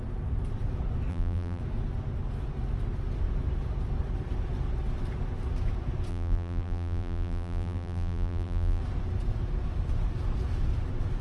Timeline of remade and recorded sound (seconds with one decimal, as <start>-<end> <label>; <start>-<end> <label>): 0.0-1.1 recorded; 1.1-1.6 remade; 1.6-6.1 recorded; 6.1-8.8 remade; 8.8-11.2 recorded